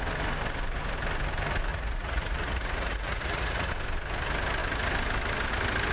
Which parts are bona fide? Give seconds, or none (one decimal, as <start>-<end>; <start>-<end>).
0.0-1.7; 3.7-5.9